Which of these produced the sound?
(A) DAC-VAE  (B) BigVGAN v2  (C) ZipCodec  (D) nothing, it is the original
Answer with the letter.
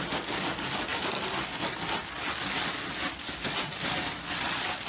D